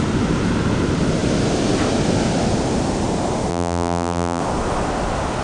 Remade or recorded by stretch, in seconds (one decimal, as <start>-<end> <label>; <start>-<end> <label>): 0.0-3.5 recorded; 3.5-4.4 remade; 4.4-5.4 recorded